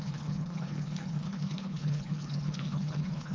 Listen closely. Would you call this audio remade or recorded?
remade